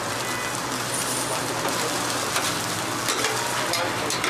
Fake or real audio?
real